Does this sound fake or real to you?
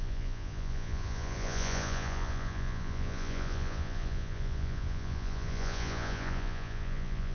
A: fake